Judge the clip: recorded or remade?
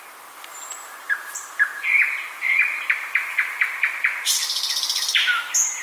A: remade